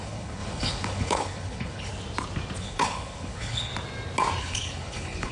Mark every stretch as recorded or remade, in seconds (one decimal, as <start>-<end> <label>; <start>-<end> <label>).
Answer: 0.0-1.9 remade; 1.9-2.6 recorded; 2.6-3.7 remade; 3.7-4.4 recorded; 4.4-5.3 remade